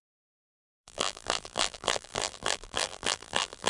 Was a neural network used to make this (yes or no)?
yes